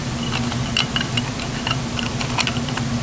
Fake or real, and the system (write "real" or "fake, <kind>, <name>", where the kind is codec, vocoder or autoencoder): real